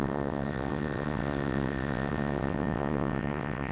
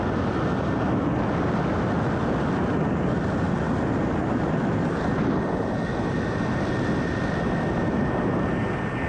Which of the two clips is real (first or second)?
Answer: second